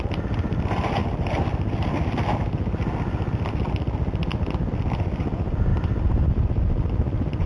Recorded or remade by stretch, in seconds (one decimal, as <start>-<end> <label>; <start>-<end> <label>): 0.0-7.5 recorded

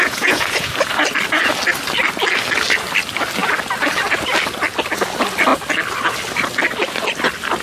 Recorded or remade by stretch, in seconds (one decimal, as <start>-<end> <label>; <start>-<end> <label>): 0.0-0.7 remade; 0.7-7.6 recorded